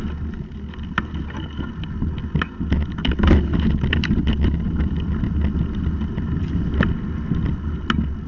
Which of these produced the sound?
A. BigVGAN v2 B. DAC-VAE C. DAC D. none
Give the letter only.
D